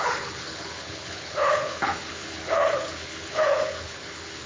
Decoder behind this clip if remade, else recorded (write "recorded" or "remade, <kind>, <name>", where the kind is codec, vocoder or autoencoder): remade, codec, HILCodec